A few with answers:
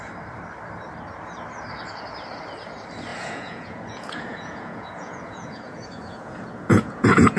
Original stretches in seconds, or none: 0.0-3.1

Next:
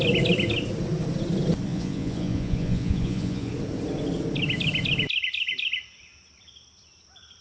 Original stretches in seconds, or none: 0.0-1.7; 3.5-7.4

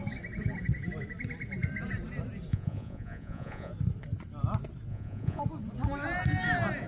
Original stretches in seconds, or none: 0.0-2.5; 3.7-4.9; 5.4-6.9

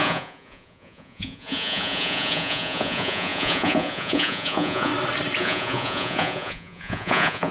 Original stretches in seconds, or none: 4.9-5.4

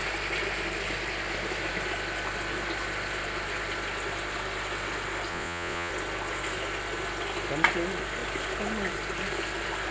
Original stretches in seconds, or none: 0.0-5.3; 5.9-9.9

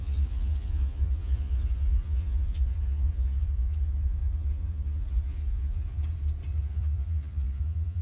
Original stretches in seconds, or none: 6.0-6.6

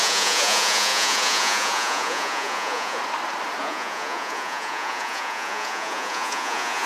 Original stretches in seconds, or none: 3.0-3.6

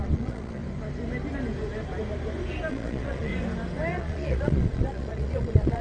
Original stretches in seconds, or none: 0.6-2.7; 3.3-3.9